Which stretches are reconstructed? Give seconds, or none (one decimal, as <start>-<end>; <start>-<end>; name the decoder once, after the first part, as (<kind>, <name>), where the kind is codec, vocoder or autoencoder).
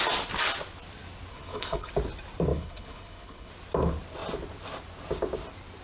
1.3-1.9 (codec, HILCodec); 2.5-3.5